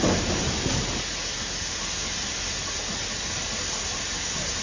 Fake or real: real